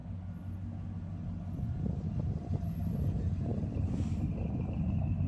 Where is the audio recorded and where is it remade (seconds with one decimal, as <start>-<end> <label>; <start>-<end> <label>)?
0.0-3.5 recorded; 3.5-4.3 remade; 4.3-5.3 recorded